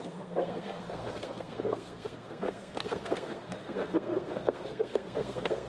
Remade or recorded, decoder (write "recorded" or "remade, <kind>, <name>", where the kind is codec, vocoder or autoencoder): remade, codec, SNAC